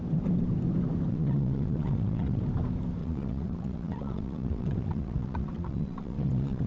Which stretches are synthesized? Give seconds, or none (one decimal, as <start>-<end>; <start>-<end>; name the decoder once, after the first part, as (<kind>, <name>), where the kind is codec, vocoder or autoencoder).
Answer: 1.1-2.4 (vocoder, WaveNeXt); 3.0-6.7

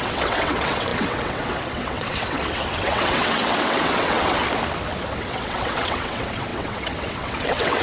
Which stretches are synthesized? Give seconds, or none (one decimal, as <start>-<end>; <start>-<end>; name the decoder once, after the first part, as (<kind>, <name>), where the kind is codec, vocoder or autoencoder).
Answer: 0.0-4.4 (vocoder, WaveNeXt); 5.1-7.8

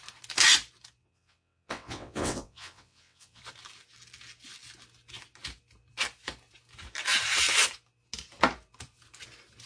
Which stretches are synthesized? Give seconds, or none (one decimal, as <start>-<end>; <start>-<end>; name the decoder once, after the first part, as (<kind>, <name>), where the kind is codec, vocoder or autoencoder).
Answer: 1.0-3.4 (vocoder, WaveNeXt)

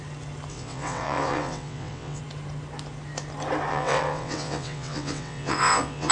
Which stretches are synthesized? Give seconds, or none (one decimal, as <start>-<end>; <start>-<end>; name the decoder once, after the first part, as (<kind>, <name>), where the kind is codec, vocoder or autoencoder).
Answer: 0.5-2.2 (vocoder, WaveNeXt); 3.7-6.1

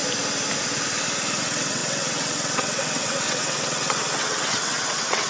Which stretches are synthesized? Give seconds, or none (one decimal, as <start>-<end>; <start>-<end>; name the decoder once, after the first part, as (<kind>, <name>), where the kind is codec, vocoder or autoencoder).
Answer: 1.4-5.3 (vocoder, WaveNeXt)